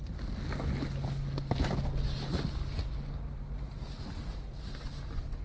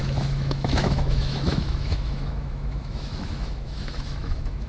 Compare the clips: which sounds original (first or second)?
first